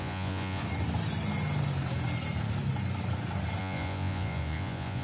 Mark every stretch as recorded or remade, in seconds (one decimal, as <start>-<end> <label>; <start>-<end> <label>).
0.0-0.6 remade; 0.6-3.6 recorded; 3.6-5.0 remade